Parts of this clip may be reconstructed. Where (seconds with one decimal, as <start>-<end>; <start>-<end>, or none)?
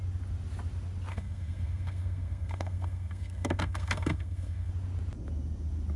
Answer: 1.1-4.7